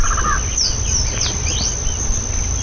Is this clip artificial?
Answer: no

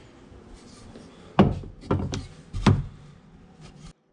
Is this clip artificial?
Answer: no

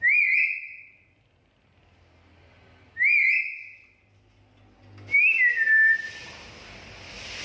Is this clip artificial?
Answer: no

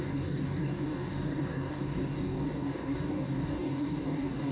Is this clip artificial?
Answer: yes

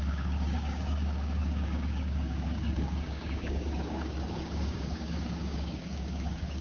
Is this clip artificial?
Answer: yes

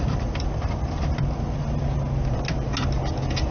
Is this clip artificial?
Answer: no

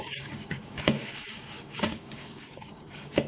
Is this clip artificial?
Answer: yes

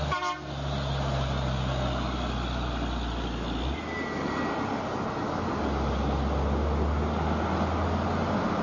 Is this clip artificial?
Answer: no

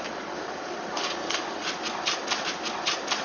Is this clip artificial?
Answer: no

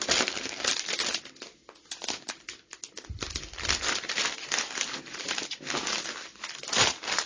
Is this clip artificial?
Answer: no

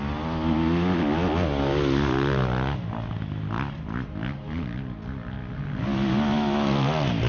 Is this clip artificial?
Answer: no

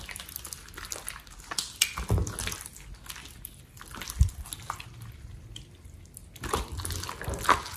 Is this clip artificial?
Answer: no